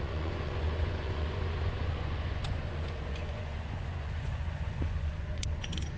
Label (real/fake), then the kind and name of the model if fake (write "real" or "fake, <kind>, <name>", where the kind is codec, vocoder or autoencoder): fake, vocoder, Vocos